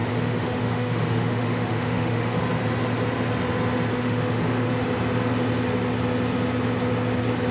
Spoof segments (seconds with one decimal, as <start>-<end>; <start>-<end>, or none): 0.0-2.4; 3.9-4.7